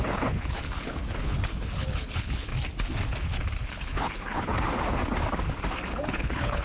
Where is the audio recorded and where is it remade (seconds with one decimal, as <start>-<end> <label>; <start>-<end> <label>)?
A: 0.0-2.5 remade; 2.5-3.7 recorded; 3.7-4.5 remade; 4.5-6.0 recorded; 6.0-6.6 remade